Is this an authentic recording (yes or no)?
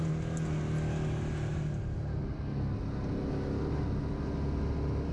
yes